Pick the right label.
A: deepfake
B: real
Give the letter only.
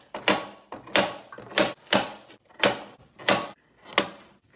B